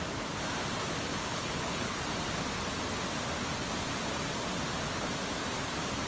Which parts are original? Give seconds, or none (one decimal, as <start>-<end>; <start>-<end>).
0.0-1.2; 2.0-6.1